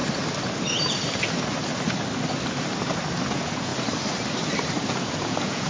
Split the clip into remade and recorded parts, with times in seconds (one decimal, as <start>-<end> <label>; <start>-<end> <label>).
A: 0.0-3.3 recorded; 3.3-3.7 remade; 3.7-4.9 recorded; 4.9-5.7 remade